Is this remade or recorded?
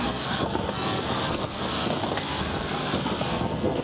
remade